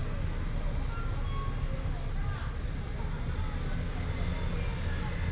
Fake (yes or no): no